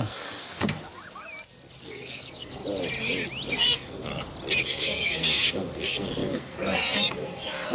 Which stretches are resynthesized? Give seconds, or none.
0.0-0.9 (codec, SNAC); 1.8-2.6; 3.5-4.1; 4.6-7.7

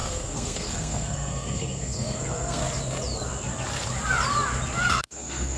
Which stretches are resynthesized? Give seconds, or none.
0.0-2.6 (codec, SNAC); 4.9-5.6

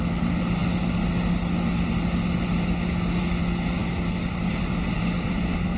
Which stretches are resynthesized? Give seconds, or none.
none

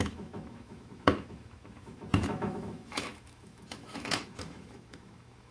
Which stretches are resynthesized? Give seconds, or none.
0.0-5.5 (autoencoder, DAC-VAE)

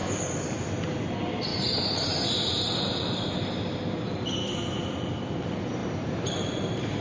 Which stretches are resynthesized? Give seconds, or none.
1.5-3.3 (vocoder, BigVGAN v2); 5.8-7.0